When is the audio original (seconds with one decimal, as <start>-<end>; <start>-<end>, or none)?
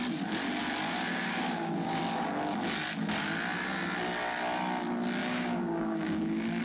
0.0-1.1; 2.0-5.2